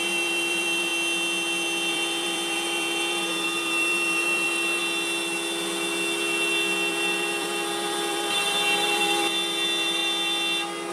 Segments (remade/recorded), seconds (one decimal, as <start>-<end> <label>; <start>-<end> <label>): 0.0-0.9 remade; 0.9-1.9 recorded; 1.9-4.8 remade; 4.8-6.9 recorded; 6.9-10.0 remade; 10.0-10.9 recorded